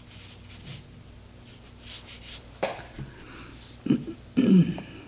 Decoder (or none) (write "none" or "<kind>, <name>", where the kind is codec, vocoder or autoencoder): none